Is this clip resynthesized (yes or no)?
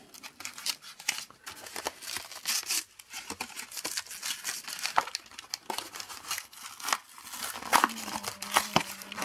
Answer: no